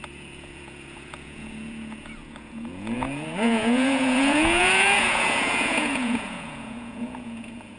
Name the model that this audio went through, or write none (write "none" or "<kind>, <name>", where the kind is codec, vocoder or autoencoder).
vocoder, Vocos